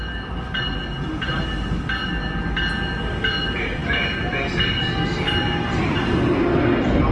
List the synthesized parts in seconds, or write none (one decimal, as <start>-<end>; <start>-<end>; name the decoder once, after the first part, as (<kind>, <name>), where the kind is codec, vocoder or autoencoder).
none